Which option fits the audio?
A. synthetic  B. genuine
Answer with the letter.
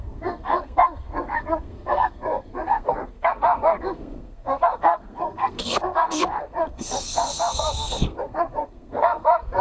A